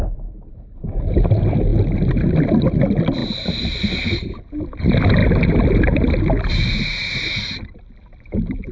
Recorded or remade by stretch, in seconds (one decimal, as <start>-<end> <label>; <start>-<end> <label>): 0.0-8.7 recorded